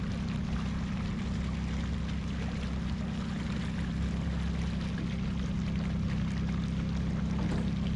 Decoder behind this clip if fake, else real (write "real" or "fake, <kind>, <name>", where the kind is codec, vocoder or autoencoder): real